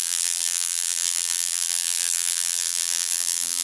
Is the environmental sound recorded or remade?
remade